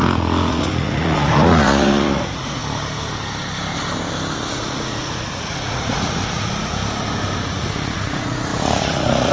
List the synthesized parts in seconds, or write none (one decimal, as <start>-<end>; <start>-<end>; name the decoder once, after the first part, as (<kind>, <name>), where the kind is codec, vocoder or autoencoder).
0.0-2.6 (vocoder, Vocos); 4.5-6.8; 7.5-9.3